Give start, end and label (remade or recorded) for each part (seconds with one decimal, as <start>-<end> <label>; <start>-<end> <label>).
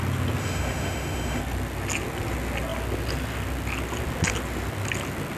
0.0-0.4 recorded; 0.4-1.4 remade; 1.4-5.4 recorded